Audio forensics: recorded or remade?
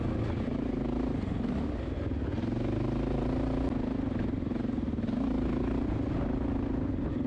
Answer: recorded